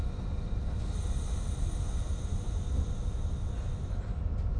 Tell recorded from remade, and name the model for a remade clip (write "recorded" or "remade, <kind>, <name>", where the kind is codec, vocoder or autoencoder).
recorded